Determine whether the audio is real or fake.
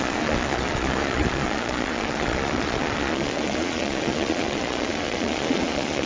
fake